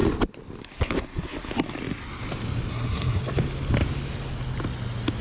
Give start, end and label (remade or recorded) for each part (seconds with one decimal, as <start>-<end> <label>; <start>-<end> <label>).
0.0-2.7 recorded; 2.7-3.2 remade; 3.2-5.2 recorded